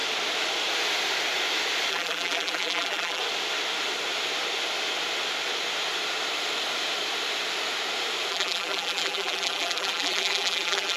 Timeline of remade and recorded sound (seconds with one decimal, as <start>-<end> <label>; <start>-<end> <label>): 0.0-1.9 recorded; 1.9-3.2 remade; 3.2-8.3 recorded; 8.3-11.0 remade